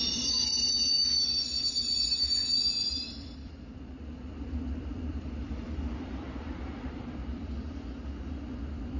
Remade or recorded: remade